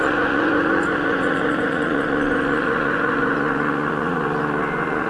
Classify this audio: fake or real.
fake